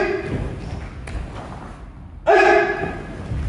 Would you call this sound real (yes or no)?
yes